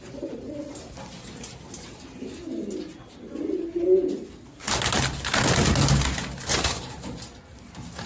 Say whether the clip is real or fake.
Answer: real